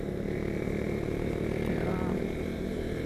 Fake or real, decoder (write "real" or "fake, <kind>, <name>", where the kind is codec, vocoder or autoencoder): fake, vocoder, BigVGAN v2